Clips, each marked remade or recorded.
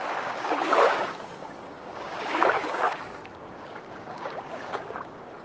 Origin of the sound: remade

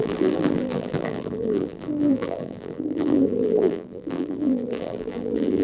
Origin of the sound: remade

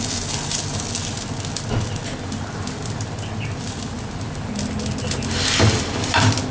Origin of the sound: recorded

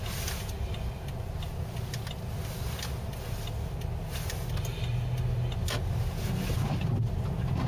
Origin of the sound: recorded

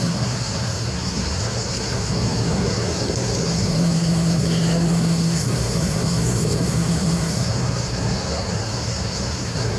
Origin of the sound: remade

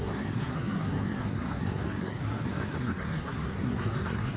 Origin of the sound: remade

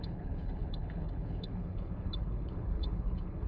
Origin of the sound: remade